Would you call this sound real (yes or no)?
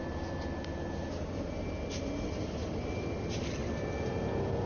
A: yes